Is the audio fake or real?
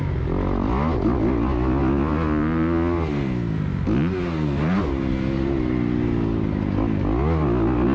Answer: real